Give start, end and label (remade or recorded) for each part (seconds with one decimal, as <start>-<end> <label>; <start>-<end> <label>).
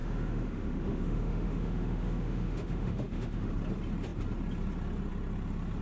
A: 0.0-3.5 remade; 3.5-5.8 recorded